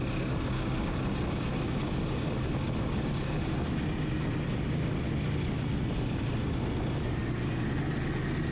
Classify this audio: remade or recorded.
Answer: recorded